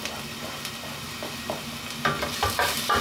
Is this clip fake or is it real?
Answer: real